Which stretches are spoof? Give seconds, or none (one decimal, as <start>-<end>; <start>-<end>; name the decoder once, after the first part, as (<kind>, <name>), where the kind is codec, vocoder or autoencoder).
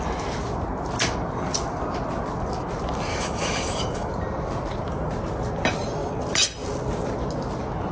3.1-4.1 (autoencoder, DAC-VAE)